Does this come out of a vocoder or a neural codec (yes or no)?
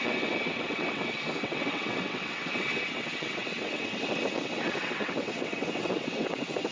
yes